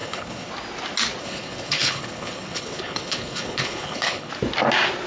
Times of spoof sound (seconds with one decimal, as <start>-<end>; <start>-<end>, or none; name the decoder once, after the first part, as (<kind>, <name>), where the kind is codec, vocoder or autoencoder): 0.0-0.5 (codec, HILCodec); 1.2-4.3